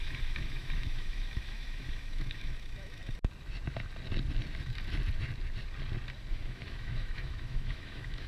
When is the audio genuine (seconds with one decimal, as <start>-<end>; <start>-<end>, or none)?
3.0-6.3